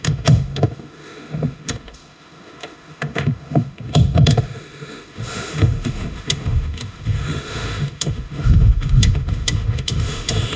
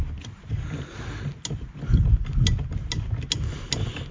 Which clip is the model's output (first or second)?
first